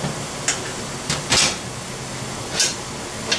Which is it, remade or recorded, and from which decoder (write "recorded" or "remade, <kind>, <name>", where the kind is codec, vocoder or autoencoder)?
recorded